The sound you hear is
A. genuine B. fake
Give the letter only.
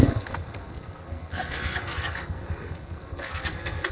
B